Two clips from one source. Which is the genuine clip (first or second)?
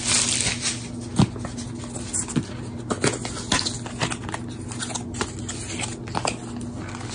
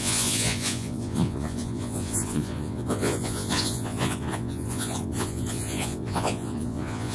first